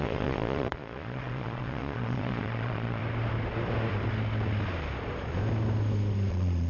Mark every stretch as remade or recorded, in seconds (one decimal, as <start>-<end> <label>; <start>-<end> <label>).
0.0-3.0 remade; 3.0-6.3 recorded; 6.3-6.7 remade